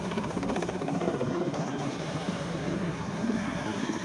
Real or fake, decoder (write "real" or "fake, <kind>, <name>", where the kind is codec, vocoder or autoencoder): fake, codec, SNAC